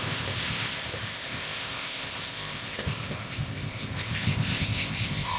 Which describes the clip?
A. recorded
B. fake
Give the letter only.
B